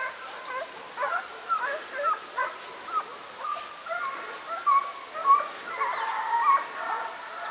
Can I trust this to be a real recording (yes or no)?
yes